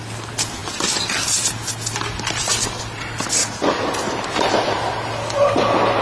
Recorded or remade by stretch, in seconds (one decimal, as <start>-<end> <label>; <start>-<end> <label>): 0.0-6.0 recorded